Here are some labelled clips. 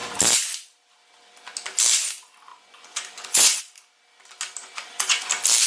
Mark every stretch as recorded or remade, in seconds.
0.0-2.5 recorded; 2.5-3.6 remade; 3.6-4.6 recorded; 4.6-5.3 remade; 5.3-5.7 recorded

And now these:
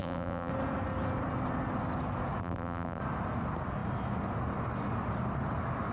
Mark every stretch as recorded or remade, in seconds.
0.0-0.5 remade; 0.5-2.4 recorded; 2.4-3.0 remade; 3.0-5.9 recorded

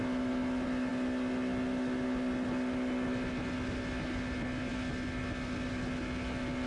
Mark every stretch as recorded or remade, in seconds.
0.0-6.7 recorded

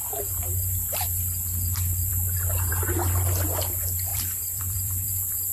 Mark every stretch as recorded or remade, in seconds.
0.0-4.1 recorded; 4.1-5.1 remade; 5.1-5.5 recorded

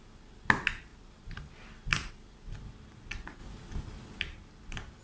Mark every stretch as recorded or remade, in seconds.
0.0-0.9 recorded; 0.9-1.5 remade; 1.5-5.0 recorded

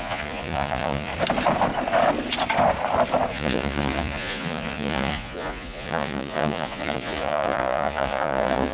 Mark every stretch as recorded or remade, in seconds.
0.0-1.1 remade; 1.1-3.3 recorded; 3.3-8.7 remade

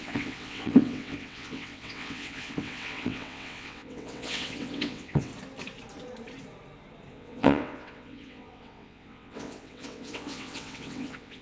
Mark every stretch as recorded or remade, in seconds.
0.0-5.3 remade; 5.3-7.1 recorded; 7.1-11.4 remade